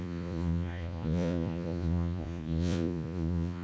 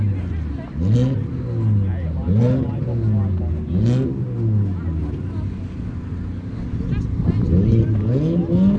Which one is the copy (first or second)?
first